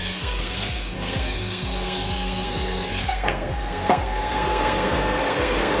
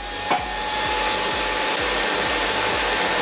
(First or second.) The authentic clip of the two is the second